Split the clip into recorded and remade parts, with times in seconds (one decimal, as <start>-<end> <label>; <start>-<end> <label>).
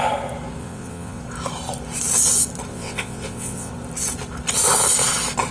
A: 0.0-0.6 recorded; 0.6-1.2 remade; 1.2-2.7 recorded; 2.7-3.7 remade; 3.7-5.5 recorded